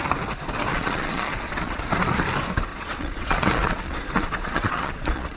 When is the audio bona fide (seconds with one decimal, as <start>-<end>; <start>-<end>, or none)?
0.0-0.7; 1.8-2.7